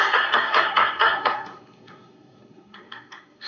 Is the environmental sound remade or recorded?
remade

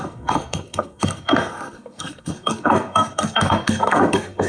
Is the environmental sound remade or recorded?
remade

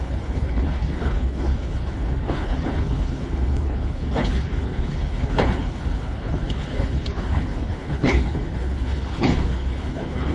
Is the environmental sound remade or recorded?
remade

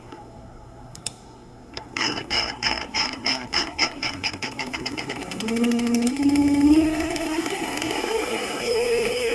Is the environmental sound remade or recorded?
remade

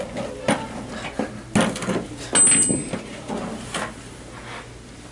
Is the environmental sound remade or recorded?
recorded